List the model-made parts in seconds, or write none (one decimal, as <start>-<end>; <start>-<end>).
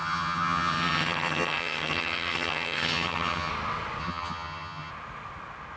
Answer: 0.0-3.5; 4.0-4.9